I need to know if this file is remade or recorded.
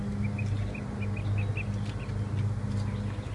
recorded